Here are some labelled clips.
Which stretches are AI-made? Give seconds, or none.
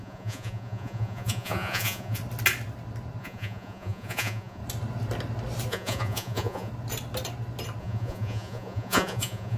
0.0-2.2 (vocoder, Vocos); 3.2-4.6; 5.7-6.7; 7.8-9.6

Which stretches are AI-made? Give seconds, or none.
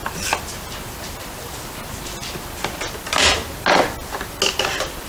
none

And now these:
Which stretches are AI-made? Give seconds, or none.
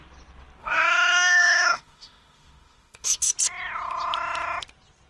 0.6-3.3 (autoencoder, DAC-VAE)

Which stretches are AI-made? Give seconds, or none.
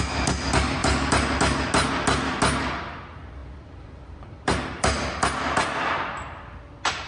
0.8-1.4 (vocoder, BigVGAN v2); 3.4-6.6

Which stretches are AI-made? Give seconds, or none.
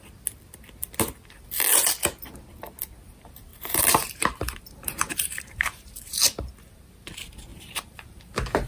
3.5-6.2 (vocoder, BigVGAN v2); 7.5-8.7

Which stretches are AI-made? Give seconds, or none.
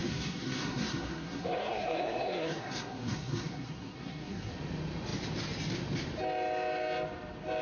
0.0-4.5 (codec, SNAC)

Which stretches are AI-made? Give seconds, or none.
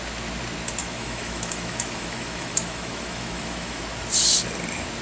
0.8-3.8 (autoencoder, DAC-VAE)